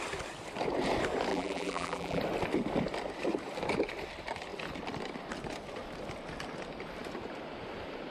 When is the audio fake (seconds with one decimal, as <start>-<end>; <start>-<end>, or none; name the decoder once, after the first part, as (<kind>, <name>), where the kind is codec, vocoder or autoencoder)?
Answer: 1.3-2.2 (vocoder, BigVGAN v2)